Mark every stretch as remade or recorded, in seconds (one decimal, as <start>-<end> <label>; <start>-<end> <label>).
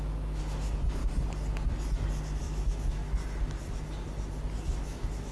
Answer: 0.0-1.0 remade; 1.0-2.4 recorded; 2.4-3.0 remade; 3.0-4.6 recorded; 4.6-5.3 remade